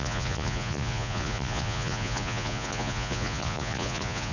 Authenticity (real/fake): fake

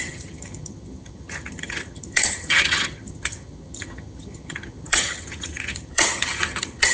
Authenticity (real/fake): fake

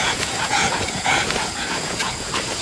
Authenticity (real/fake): fake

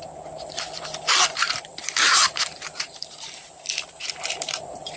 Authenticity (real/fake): fake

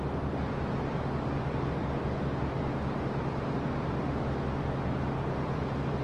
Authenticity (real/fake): real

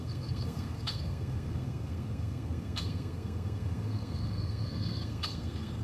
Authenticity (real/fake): fake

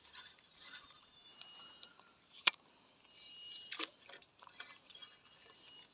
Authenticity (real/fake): real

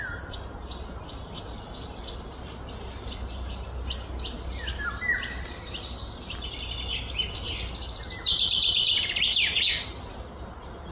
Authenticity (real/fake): real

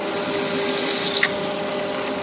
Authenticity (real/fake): real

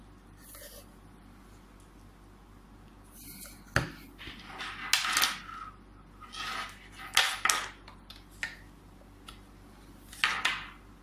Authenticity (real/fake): real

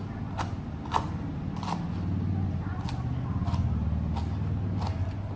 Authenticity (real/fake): real